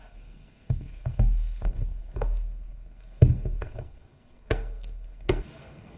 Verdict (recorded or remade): remade